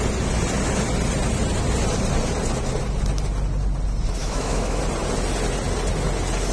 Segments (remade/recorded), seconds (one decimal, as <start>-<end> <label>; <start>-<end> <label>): 0.0-4.2 recorded; 4.2-4.8 remade; 4.8-6.5 recorded